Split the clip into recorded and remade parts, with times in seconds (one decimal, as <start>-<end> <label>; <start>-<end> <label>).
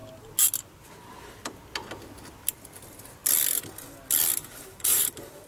0.0-4.4 recorded; 4.4-5.5 remade